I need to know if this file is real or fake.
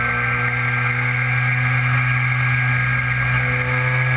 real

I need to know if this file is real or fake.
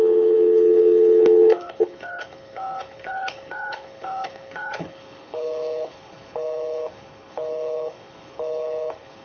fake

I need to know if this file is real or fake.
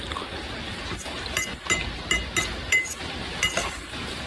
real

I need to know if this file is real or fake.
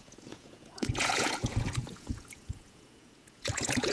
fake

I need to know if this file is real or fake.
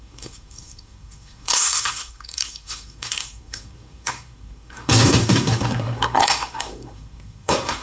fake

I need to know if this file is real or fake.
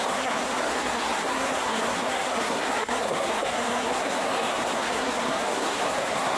fake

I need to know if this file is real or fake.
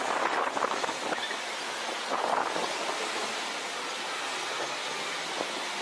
real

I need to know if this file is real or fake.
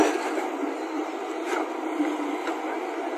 real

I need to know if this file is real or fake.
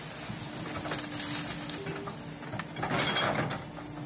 real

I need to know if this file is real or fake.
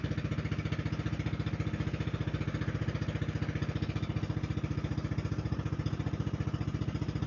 real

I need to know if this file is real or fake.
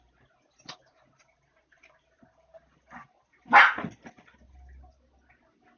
real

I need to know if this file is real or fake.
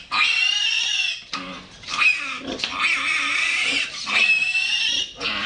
real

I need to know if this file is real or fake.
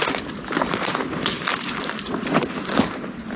real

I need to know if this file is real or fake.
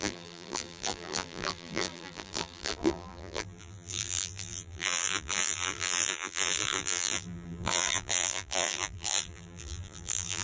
fake